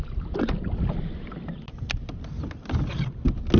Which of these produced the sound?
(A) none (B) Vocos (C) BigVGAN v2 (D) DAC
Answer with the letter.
A